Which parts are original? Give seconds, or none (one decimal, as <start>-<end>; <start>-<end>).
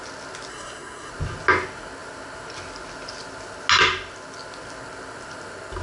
0.0-0.5; 1.1-5.8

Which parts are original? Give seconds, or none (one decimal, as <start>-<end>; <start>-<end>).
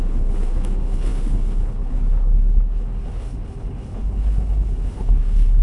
none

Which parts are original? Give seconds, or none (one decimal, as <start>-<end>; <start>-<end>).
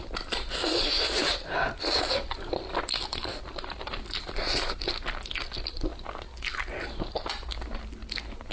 0.0-8.5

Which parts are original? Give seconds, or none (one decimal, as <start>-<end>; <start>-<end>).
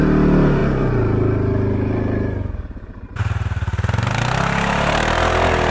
0.0-5.7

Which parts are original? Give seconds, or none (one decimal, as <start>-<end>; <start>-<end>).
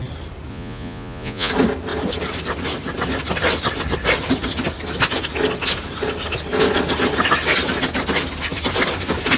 0.0-0.5; 1.5-9.4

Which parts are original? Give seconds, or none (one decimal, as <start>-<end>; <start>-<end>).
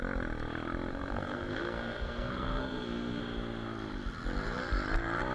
0.0-0.9; 3.2-5.3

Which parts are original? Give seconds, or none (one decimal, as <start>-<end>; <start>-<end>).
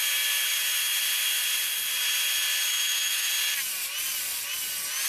0.0-2.7; 3.3-5.1